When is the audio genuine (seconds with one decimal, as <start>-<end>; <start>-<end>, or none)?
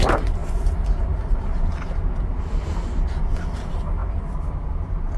0.0-5.2